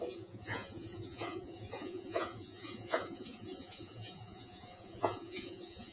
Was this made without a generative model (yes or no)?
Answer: no